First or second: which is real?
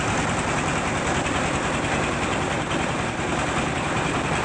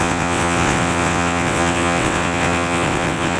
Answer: first